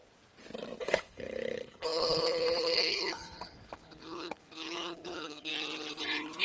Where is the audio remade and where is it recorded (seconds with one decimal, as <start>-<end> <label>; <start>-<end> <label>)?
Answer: 0.0-0.8 recorded; 0.8-5.5 remade; 5.5-6.4 recorded